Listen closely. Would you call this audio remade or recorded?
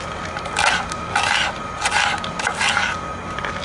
recorded